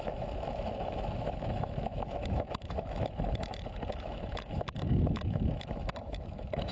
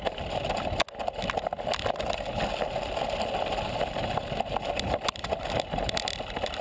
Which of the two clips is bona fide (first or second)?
second